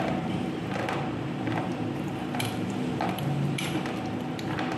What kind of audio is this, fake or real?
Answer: fake